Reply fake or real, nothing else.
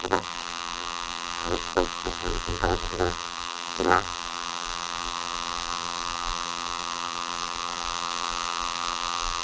fake